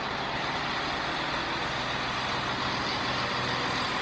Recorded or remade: recorded